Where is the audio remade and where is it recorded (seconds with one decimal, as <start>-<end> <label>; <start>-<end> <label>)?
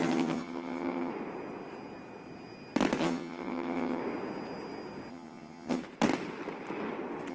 0.0-1.1 remade; 1.1-3.0 recorded; 3.0-4.0 remade; 4.0-5.1 recorded; 5.1-5.8 remade; 5.8-7.3 recorded